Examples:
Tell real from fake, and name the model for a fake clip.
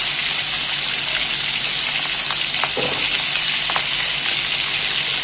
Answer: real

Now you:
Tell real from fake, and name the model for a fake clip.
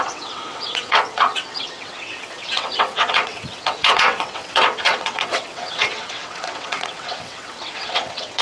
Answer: fake, vocoder, WaveNeXt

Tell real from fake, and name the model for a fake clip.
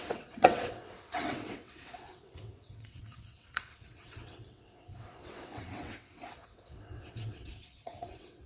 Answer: fake, vocoder, WaveNeXt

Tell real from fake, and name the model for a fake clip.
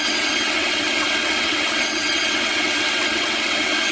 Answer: fake, vocoder, WaveNeXt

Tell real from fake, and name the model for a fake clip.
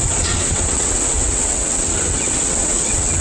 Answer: fake, vocoder, WaveNeXt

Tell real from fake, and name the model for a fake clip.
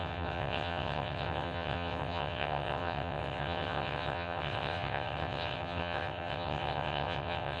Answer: fake, vocoder, WaveNeXt